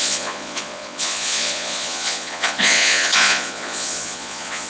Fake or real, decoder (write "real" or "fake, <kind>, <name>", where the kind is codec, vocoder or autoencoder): fake, vocoder, Vocos